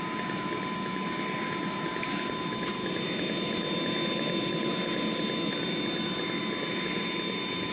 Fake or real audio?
real